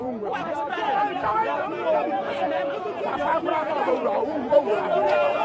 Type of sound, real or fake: fake